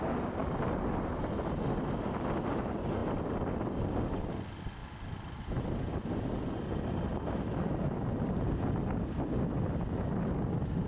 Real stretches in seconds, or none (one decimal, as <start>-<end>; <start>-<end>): 0.0-10.9